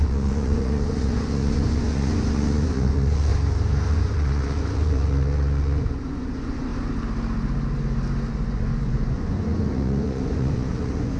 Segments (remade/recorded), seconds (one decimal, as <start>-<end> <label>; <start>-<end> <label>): 0.0-3.3 remade; 3.3-3.9 recorded; 3.9-6.7 remade; 6.7-8.3 recorded; 8.3-11.2 remade